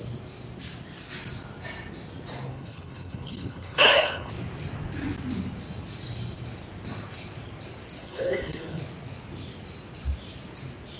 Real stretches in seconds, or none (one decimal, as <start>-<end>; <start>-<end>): 0.0-2.5; 4.3-8.0; 8.8-11.0